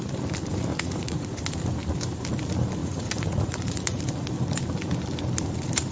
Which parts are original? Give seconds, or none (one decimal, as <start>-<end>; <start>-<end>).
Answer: 0.0-0.7; 1.4-2.8; 4.0-5.9